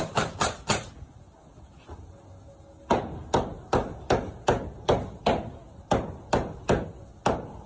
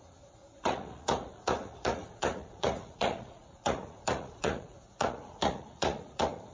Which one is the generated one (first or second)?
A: second